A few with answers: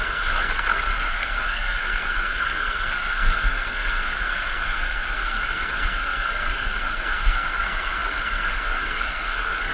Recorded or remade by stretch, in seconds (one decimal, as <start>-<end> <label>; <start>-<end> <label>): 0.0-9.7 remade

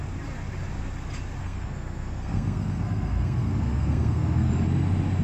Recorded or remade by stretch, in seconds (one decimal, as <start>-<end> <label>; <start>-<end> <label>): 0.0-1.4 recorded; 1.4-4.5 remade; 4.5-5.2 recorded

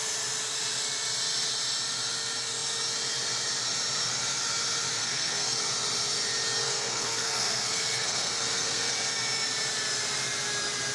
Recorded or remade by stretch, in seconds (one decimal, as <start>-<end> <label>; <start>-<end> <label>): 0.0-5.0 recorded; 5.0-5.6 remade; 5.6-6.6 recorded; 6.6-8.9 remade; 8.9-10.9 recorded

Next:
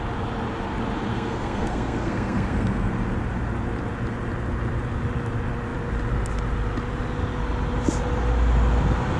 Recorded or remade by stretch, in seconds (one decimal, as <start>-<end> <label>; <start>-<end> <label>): 0.0-1.1 recorded; 1.1-2.9 remade; 2.9-9.2 recorded

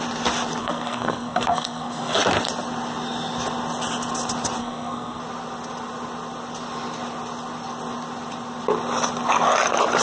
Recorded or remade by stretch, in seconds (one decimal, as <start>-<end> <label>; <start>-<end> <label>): 0.0-0.6 recorded; 0.6-2.2 remade; 2.2-4.6 recorded; 4.6-5.2 remade; 5.2-10.0 recorded